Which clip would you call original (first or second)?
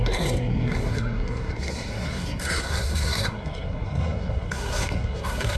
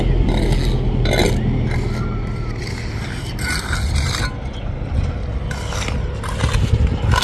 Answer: second